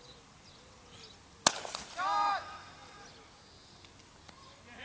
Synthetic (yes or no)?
no